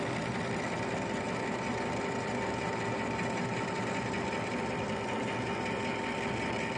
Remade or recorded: recorded